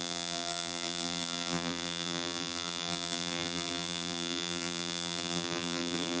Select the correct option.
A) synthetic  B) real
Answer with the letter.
A